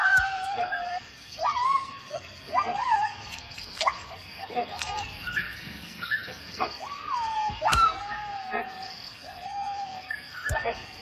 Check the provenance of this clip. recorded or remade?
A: remade